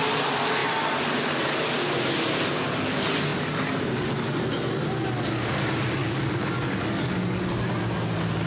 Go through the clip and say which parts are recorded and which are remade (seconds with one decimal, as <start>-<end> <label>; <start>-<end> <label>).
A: 0.0-3.3 recorded; 3.3-3.8 remade; 3.8-6.0 recorded; 6.0-7.4 remade; 7.4-8.5 recorded